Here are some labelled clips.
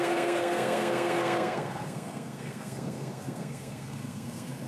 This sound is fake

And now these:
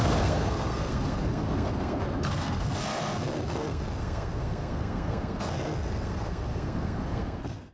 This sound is fake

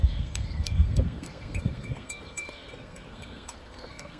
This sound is fake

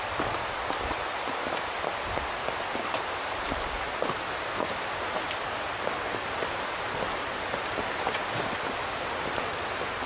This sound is real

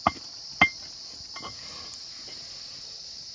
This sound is real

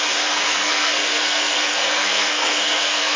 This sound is fake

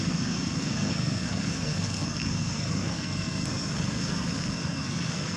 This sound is fake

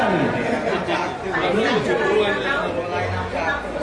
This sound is real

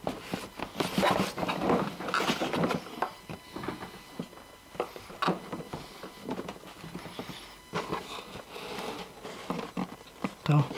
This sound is real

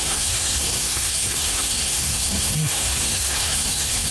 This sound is fake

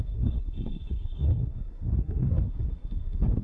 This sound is fake